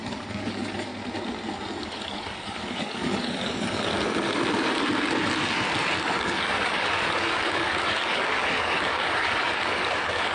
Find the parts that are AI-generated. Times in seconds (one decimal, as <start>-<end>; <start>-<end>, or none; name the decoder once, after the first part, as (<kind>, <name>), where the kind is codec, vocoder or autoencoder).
0.0-0.9 (codec, DAC); 1.8-3.9; 6.0-10.3